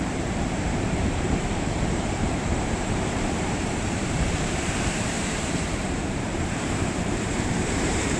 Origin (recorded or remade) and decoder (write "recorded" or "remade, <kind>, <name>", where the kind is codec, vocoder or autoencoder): remade, vocoder, BigVGAN v2